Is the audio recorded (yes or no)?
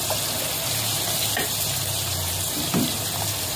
no